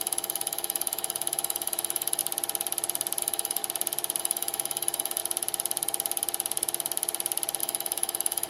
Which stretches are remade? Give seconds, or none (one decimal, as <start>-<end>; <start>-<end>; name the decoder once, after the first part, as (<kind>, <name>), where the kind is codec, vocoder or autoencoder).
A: 0.0-2.2 (autoencoder, DAC-VAE); 3.2-3.6; 4.2-5.2; 7.6-8.5